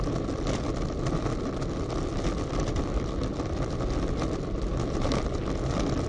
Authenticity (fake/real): real